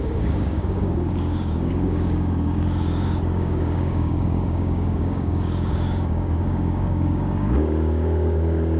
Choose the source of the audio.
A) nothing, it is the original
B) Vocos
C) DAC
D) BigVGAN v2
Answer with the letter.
C